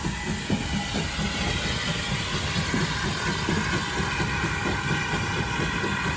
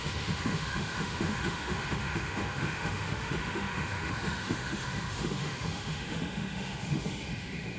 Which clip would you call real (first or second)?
first